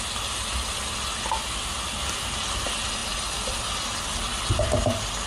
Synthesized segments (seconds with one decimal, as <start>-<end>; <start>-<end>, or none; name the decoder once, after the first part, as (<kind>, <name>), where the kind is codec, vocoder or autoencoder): none